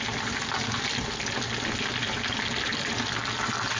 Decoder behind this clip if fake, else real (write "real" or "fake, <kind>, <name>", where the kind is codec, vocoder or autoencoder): real